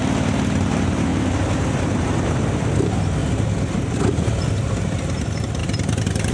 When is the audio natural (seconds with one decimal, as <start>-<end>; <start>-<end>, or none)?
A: 1.1-1.8; 3.2-4.6; 5.6-6.3